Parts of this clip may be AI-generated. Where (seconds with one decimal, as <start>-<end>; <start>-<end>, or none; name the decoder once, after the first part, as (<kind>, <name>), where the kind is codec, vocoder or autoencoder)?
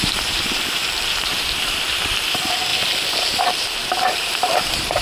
0.0-5.0 (vocoder, BigVGAN v2)